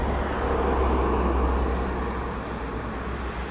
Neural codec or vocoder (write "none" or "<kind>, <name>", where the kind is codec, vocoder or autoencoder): none